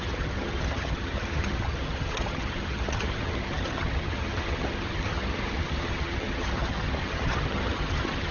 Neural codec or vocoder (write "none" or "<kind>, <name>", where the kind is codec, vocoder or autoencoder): vocoder, HiFi-GAN